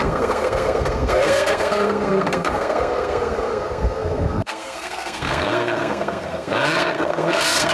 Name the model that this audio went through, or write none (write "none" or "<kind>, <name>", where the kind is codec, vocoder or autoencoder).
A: codec, SNAC